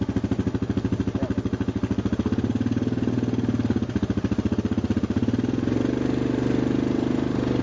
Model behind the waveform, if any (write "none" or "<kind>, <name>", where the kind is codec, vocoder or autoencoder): none